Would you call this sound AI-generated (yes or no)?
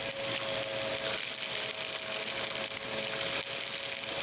no